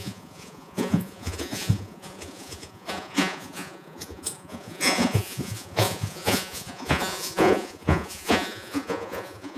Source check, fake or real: fake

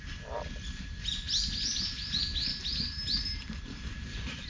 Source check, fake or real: real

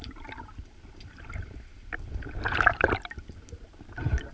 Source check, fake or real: real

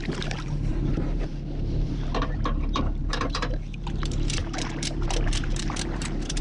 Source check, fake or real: fake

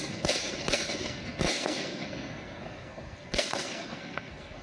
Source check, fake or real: fake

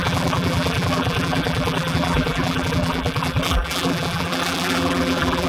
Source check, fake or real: fake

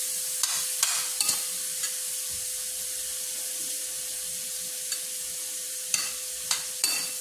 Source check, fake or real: fake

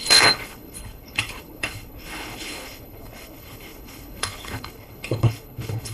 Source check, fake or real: fake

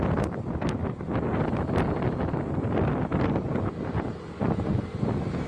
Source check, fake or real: real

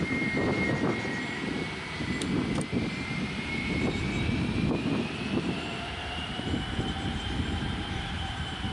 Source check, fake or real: fake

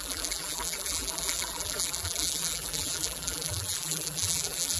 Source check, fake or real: fake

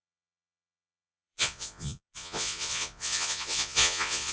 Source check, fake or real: fake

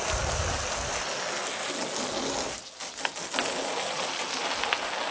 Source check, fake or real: real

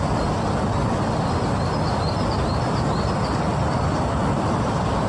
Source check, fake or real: real